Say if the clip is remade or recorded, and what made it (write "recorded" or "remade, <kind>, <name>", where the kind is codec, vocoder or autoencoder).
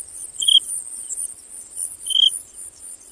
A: recorded